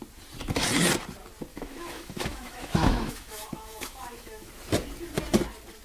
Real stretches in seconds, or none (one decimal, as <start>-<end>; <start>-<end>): 0.0-1.5; 4.5-5.8